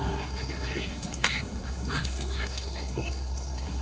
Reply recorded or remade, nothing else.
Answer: remade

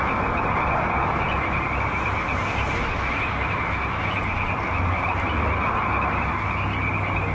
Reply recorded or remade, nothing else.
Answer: recorded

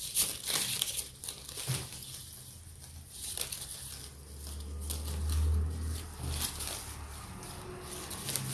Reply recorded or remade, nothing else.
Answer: recorded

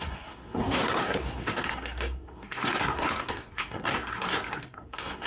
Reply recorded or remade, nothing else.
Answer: remade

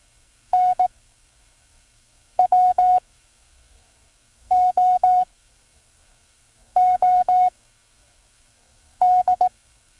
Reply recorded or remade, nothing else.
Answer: remade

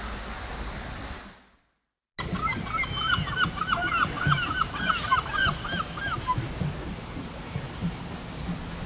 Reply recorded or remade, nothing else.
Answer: recorded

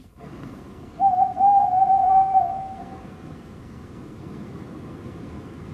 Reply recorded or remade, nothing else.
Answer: remade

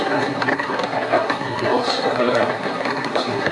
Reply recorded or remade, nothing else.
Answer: remade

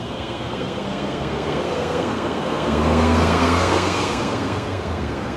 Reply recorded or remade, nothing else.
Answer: remade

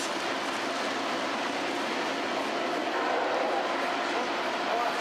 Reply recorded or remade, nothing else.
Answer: recorded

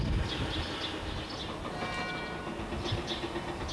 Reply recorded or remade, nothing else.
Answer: recorded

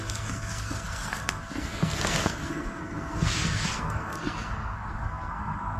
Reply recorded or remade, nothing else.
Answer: remade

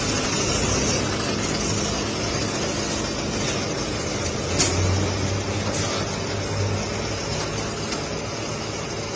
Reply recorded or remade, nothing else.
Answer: recorded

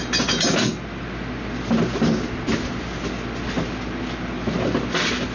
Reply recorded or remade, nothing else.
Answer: recorded